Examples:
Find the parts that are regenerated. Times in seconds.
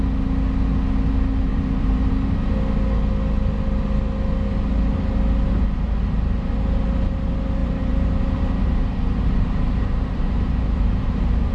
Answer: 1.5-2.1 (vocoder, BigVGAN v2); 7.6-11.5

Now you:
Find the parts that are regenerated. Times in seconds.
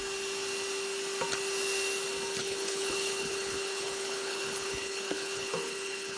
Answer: 2.4-6.2 (codec, HILCodec)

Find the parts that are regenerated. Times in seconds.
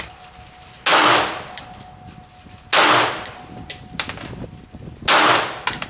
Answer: none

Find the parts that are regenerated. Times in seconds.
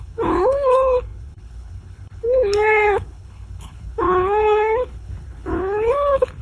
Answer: 0.0-6.4 (codec, HILCodec)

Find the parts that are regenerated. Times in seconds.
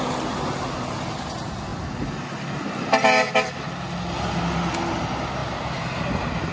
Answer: none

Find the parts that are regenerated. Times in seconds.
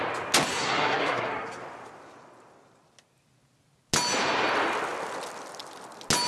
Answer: 0.5-1.6 (codec, SNAC)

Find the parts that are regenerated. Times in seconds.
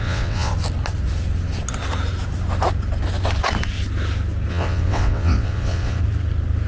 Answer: 0.0-0.5 (vocoder, WaveNeXt); 4.5-6.0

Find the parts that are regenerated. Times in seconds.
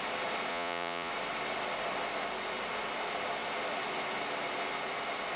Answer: 0.5-1.1 (vocoder, Vocos)